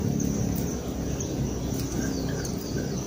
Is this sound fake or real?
real